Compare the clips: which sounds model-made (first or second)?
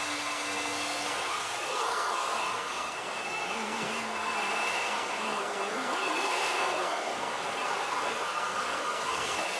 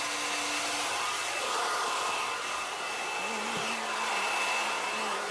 first